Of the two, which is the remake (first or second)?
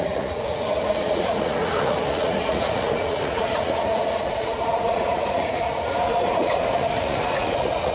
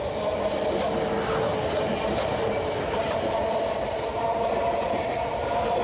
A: first